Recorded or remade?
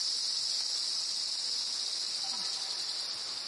recorded